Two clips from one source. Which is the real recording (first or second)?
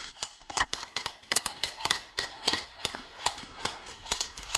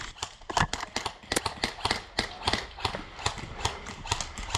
second